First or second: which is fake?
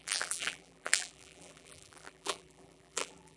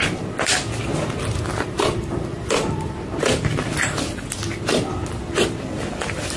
first